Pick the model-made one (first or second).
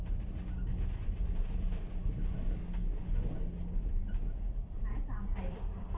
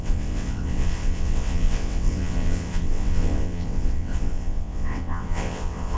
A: second